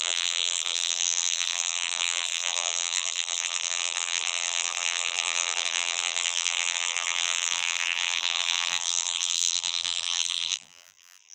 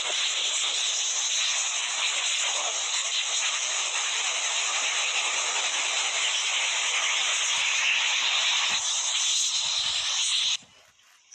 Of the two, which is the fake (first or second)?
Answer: first